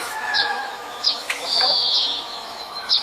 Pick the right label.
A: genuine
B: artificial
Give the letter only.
B